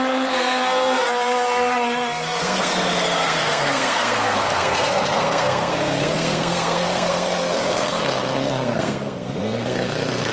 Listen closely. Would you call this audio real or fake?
fake